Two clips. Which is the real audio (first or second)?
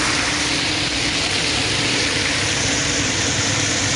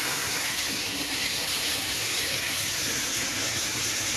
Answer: first